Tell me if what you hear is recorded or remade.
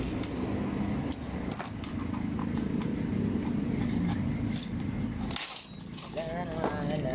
recorded